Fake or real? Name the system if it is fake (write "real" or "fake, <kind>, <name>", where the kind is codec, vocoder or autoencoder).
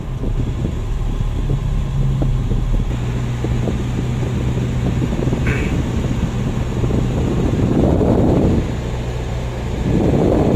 real